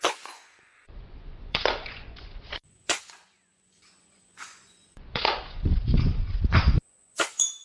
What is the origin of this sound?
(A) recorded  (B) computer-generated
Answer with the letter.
B